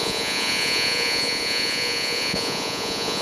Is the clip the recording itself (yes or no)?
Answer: no